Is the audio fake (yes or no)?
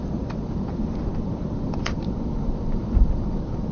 yes